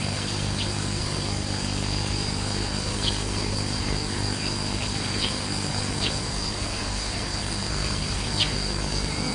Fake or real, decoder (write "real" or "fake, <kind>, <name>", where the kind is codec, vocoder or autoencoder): fake, codec, SNAC